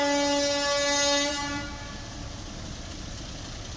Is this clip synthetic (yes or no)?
no